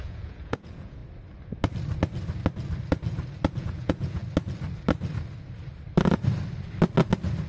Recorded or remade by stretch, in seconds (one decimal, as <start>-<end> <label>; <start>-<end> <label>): 0.0-1.0 remade; 1.0-3.6 recorded; 3.6-4.2 remade; 4.2-7.5 recorded